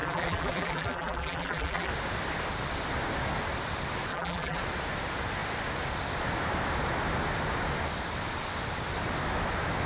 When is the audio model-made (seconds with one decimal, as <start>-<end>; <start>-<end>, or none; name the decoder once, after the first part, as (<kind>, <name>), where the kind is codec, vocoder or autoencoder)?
0.0-1.9 (vocoder, BigVGAN v2); 4.1-4.6